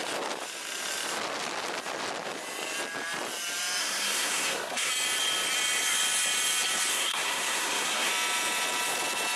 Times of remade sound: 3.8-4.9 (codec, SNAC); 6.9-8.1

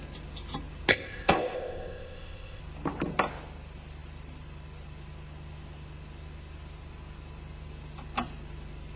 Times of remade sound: 0.9-2.6 (codec, ZipCodec)

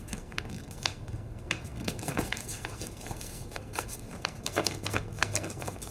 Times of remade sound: 0.0-5.9 (codec, SNAC)

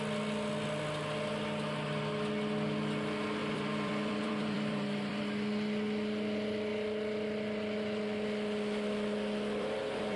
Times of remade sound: 3.4-5.2 (vocoder, BigVGAN v2); 6.7-10.2